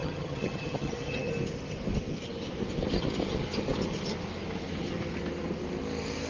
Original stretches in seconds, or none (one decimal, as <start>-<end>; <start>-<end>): 1.3-6.3